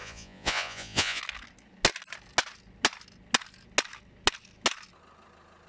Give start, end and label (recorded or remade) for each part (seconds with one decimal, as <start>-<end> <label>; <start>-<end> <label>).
0.0-1.2 remade; 1.2-5.7 recorded